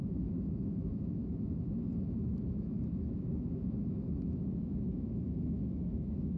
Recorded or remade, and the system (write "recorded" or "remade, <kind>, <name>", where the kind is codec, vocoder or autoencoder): remade, autoencoder, DAC-VAE